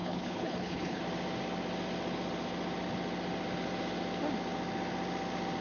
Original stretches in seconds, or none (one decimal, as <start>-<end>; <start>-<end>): 1.0-5.6